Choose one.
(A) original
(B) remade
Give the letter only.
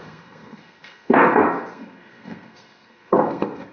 B